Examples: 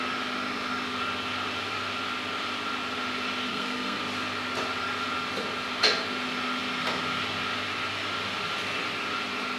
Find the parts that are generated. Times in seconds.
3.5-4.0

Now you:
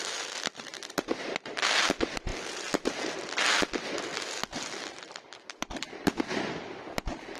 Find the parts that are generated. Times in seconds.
none

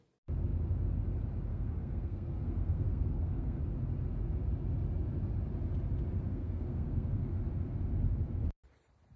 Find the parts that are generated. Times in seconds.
1.5-3.6; 6.3-7.3